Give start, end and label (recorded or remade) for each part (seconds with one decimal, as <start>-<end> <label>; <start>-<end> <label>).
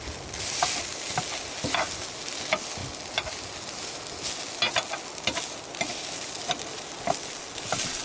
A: 0.0-8.0 recorded